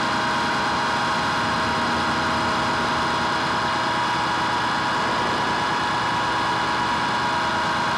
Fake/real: real